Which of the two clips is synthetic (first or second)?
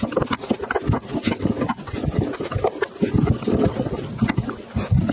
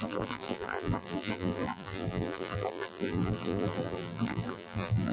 second